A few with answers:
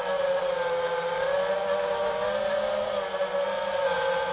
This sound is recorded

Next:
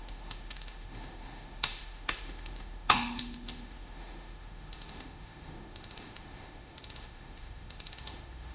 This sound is remade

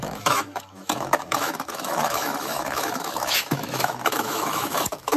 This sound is remade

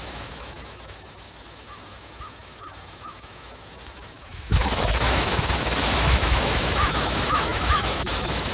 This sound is remade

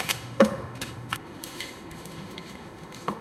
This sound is remade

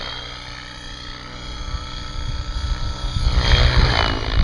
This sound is recorded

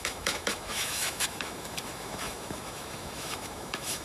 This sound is remade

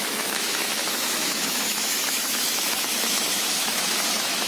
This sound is remade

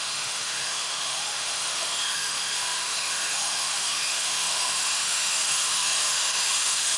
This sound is remade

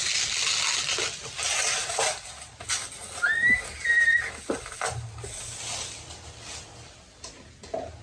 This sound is recorded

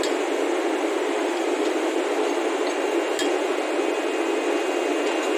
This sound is recorded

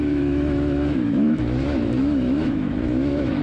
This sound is remade